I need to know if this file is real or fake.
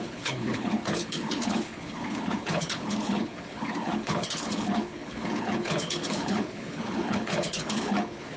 fake